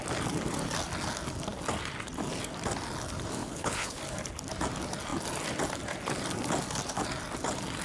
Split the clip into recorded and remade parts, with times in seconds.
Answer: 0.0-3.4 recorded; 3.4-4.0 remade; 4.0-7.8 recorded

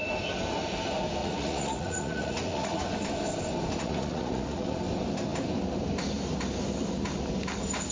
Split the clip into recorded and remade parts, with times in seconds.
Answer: 0.0-1.2 recorded; 1.2-2.8 remade; 2.8-3.8 recorded; 3.8-4.8 remade; 4.8-7.9 recorded

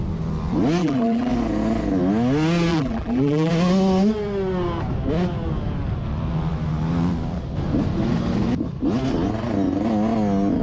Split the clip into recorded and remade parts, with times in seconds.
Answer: 0.0-0.8 recorded; 0.8-1.3 remade; 1.3-2.7 recorded; 2.7-3.5 remade; 3.5-10.6 recorded